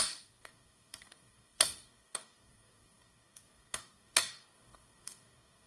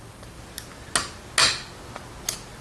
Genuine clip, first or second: second